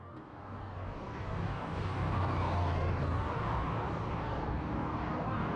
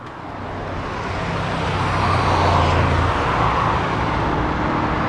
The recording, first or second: second